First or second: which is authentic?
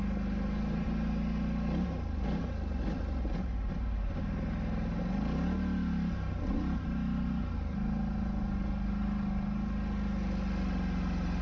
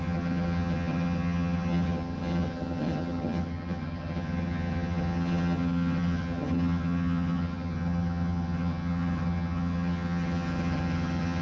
first